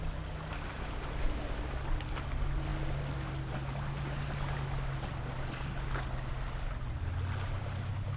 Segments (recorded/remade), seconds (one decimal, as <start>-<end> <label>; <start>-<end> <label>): 0.0-8.2 recorded